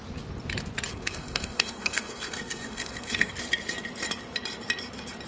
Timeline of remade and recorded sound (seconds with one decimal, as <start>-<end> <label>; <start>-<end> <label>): 0.0-0.9 recorded; 0.9-3.3 remade; 3.3-5.3 recorded